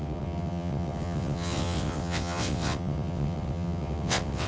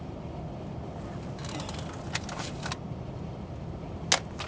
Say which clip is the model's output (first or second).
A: first